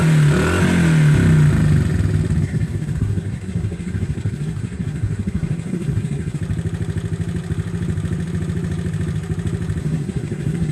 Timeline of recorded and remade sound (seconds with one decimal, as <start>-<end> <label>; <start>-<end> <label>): 0.0-2.4 recorded; 2.4-6.4 remade; 6.4-9.8 recorded; 9.8-10.7 remade